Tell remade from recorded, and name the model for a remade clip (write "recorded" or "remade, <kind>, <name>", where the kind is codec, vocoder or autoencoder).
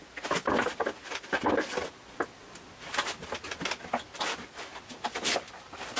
recorded